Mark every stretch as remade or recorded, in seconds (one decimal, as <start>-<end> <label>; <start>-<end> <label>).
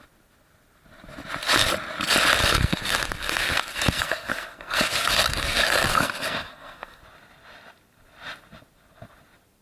0.0-2.4 recorded; 2.4-7.0 remade; 7.0-9.6 recorded